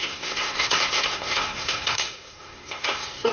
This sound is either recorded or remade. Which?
remade